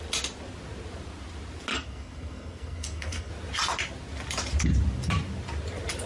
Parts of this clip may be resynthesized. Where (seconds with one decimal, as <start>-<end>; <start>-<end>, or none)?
1.7-3.3